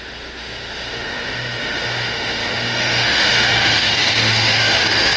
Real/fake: fake